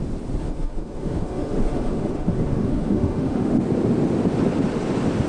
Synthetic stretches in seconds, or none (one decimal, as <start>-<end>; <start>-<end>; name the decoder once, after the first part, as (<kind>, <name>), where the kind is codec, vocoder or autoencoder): 0.4-3.6 (autoencoder, DAC-VAE)